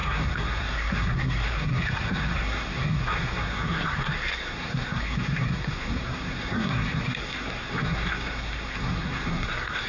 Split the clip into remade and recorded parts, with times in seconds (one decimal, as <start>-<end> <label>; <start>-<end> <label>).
0.0-9.9 remade

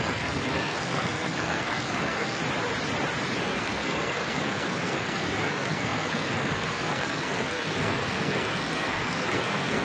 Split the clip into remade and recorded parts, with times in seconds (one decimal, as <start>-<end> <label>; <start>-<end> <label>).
0.0-2.4 remade; 2.4-3.4 recorded; 3.4-9.8 remade

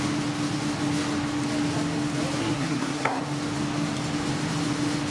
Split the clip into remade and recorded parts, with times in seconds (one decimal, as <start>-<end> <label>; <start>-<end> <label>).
0.0-2.4 recorded; 2.4-3.2 remade; 3.2-5.1 recorded

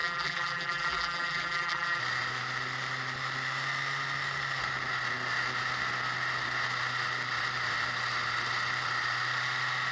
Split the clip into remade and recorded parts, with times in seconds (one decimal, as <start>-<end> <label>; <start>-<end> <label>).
0.0-2.0 remade; 2.0-9.9 recorded

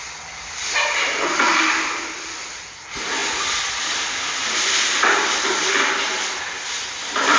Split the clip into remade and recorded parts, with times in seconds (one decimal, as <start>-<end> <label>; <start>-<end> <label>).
0.0-1.5 recorded; 1.5-2.6 remade; 2.6-3.2 recorded; 3.2-5.4 remade; 5.4-7.4 recorded

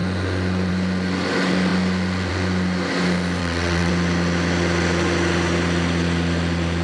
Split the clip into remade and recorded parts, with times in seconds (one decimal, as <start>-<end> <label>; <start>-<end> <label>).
0.0-3.4 recorded; 3.4-3.9 remade; 3.9-6.8 recorded

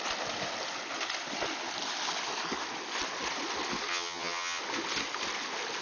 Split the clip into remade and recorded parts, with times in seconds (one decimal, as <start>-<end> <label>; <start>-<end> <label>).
0.0-3.9 recorded; 3.9-4.6 remade; 4.6-5.8 recorded